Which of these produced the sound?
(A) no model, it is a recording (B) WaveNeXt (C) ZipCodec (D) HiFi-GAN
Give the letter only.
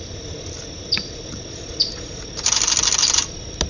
A